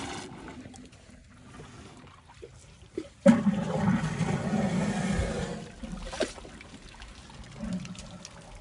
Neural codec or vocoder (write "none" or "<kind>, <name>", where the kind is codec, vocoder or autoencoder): none